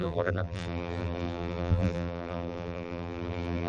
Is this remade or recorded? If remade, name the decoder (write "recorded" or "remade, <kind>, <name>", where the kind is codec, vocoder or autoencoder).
remade, vocoder, BigVGAN v2